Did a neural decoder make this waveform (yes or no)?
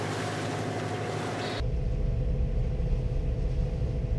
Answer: no